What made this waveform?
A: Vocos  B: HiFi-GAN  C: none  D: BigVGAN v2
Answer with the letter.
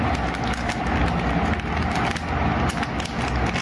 C